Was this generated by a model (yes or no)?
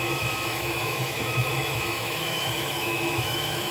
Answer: yes